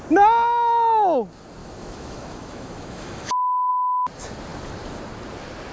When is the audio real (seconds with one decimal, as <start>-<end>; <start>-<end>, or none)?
0.0-1.6; 3.7-5.7